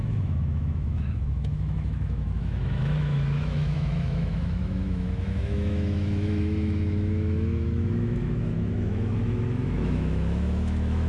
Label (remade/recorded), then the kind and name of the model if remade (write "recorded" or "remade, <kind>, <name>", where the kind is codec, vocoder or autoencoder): remade, autoencoder, DAC-VAE